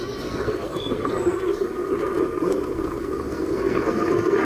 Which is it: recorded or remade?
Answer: remade